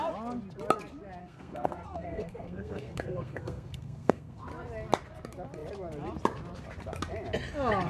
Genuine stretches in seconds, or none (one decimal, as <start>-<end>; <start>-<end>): 0.0-1.2; 4.4-7.9